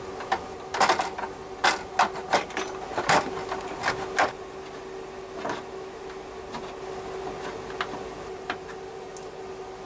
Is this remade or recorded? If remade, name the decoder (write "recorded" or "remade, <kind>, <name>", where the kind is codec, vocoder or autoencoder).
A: recorded